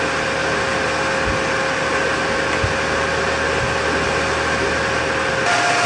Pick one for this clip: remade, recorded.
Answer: recorded